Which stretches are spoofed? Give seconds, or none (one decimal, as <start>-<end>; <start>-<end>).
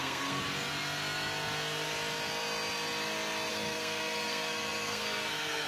0.0-0.4; 3.5-5.7